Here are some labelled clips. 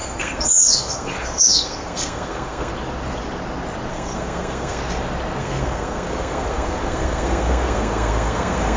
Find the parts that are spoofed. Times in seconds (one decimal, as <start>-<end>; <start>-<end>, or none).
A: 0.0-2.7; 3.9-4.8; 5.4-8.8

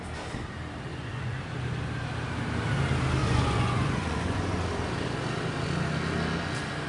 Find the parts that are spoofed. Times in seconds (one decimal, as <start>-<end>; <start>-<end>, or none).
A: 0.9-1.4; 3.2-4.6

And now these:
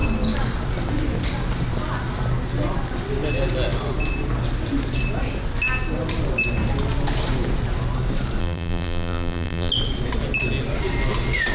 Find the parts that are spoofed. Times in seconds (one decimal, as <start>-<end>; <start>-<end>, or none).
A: 8.4-9.7

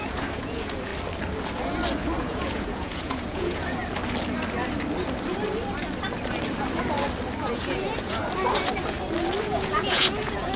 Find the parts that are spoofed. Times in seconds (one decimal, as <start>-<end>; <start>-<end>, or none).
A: 0.0-0.9; 2.2-3.8; 7.4-8.2; 9.4-10.6